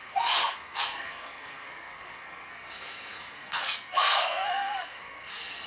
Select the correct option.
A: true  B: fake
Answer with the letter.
B